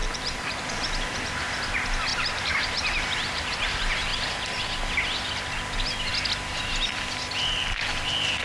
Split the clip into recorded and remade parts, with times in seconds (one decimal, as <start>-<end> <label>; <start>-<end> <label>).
0.0-0.7 remade; 0.7-2.1 recorded; 2.1-3.6 remade; 3.6-8.4 recorded